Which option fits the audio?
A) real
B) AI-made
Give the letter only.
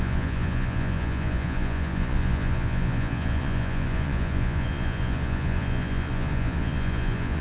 B